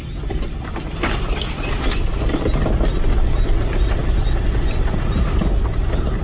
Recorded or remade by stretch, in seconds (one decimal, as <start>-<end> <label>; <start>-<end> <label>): 0.0-6.2 recorded